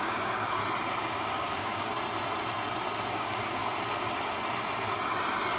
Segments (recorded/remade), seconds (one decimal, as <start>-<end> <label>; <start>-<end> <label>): 0.0-0.6 remade; 0.6-1.1 recorded; 1.1-1.9 remade; 1.9-3.1 recorded; 3.1-3.6 remade; 3.6-5.6 recorded